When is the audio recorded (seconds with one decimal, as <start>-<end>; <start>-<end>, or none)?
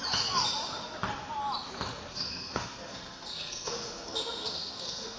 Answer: 0.0-2.1